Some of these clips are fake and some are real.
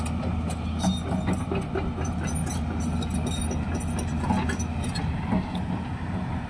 real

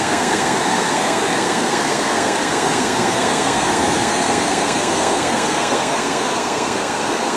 fake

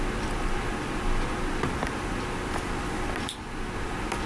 real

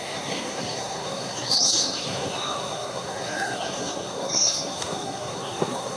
fake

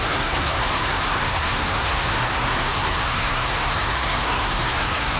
fake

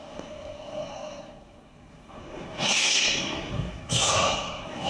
fake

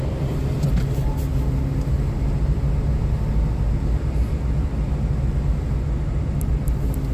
real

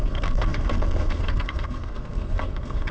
fake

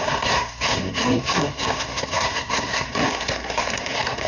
fake